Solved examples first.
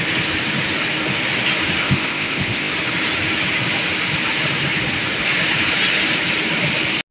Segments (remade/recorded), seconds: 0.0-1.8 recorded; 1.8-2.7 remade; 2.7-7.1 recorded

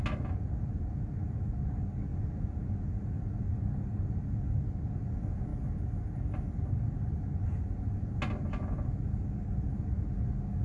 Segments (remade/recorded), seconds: 0.0-10.6 recorded

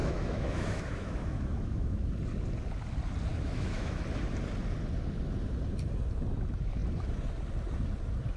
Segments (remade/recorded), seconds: 0.0-2.1 remade; 2.1-3.3 recorded; 3.3-4.0 remade; 4.0-8.4 recorded

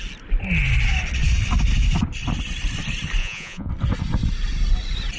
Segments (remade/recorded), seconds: 0.0-3.2 recorded; 3.2-3.7 remade; 3.7-5.2 recorded

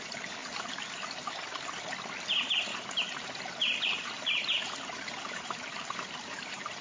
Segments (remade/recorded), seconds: 0.0-0.4 recorded; 0.4-1.3 remade; 1.3-2.7 recorded; 2.7-6.8 remade